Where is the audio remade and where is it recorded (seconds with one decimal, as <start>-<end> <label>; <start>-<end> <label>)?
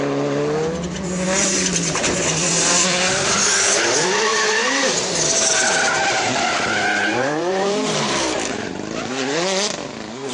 0.0-4.3 recorded; 4.3-5.2 remade; 5.2-7.1 recorded; 7.1-8.7 remade; 8.7-10.3 recorded